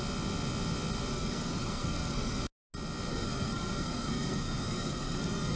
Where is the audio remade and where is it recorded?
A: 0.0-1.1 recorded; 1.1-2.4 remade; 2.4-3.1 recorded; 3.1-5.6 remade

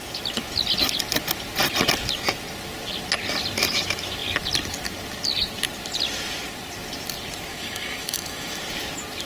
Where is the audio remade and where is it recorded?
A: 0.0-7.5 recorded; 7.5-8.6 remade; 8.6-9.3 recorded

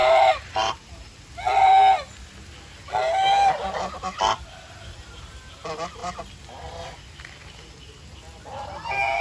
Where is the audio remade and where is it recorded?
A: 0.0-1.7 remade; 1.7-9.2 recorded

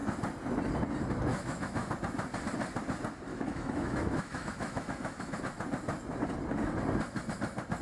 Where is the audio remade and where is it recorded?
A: 0.0-1.3 recorded; 1.3-1.9 remade; 1.9-3.3 recorded; 3.3-5.4 remade; 5.4-7.8 recorded

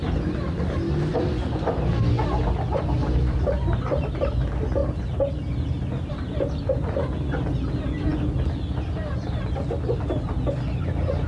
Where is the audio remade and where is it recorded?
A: 0.0-11.3 recorded

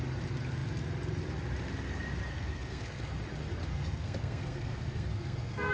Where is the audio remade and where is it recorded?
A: 0.0-2.3 recorded; 2.3-3.1 remade; 3.1-3.7 recorded; 3.7-5.7 remade

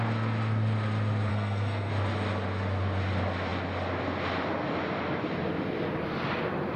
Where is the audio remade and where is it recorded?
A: 0.0-1.3 recorded; 1.3-1.9 remade; 1.9-6.8 recorded